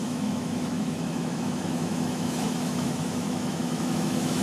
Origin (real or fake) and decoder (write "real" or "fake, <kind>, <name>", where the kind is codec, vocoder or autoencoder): fake, autoencoder, DAC-VAE